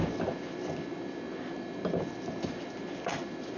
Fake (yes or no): no